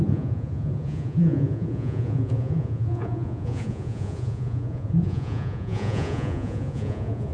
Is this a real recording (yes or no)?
no